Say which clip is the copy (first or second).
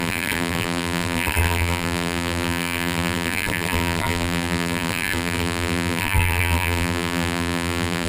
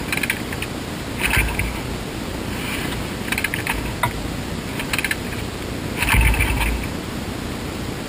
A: first